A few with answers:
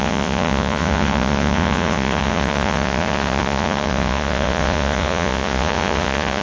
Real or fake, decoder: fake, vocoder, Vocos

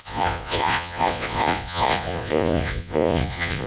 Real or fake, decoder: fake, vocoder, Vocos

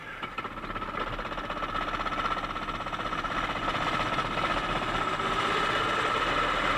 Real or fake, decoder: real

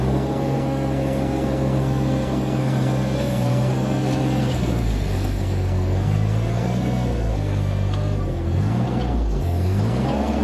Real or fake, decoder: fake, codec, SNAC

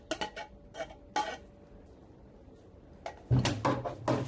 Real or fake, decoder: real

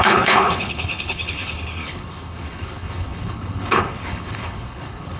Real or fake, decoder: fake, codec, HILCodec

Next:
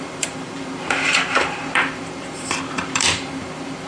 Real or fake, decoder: fake, vocoder, BigVGAN v2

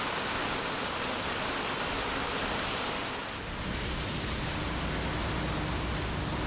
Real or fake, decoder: real